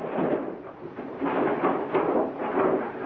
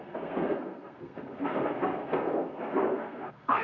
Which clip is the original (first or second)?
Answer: first